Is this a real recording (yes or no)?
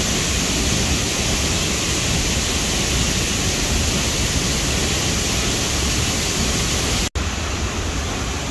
yes